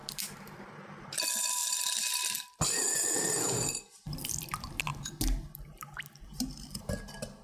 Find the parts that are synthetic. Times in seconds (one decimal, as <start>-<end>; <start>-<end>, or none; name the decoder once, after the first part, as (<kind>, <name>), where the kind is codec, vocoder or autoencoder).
none